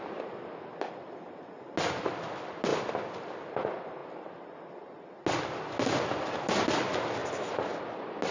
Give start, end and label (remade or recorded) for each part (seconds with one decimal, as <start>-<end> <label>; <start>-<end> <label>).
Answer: 0.0-8.3 recorded